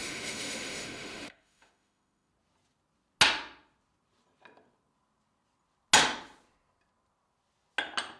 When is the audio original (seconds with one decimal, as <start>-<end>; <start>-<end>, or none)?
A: 2.3-8.2